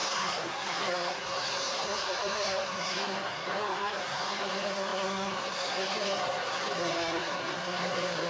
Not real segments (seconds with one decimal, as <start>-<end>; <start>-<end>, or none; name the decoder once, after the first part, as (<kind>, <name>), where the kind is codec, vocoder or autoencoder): 0.0-8.3 (codec, SNAC)